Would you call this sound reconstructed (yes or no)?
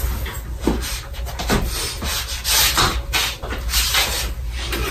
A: no